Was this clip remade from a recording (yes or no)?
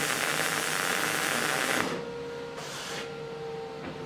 no